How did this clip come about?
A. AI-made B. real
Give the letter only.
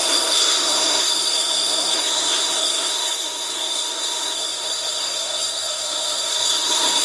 A